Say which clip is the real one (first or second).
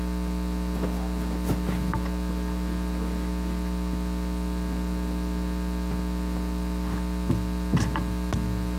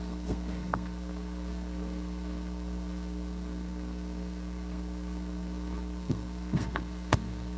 first